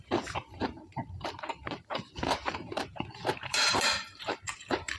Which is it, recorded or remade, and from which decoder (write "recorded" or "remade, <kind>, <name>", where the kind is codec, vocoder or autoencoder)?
remade, vocoder, BigVGAN v2